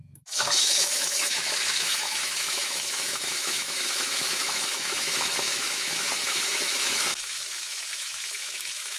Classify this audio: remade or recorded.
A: remade